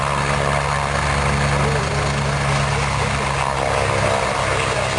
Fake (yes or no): yes